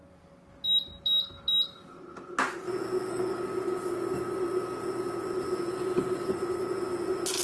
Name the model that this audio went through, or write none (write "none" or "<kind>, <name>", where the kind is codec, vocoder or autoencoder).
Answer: none